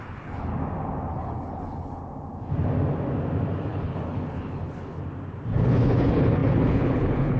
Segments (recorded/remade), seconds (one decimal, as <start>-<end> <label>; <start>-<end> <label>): 0.0-0.5 remade; 0.5-1.1 recorded; 1.1-2.0 remade; 2.0-3.7 recorded; 3.7-5.0 remade; 5.0-5.6 recorded; 5.6-7.4 remade